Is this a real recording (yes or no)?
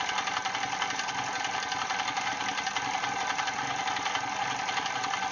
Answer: yes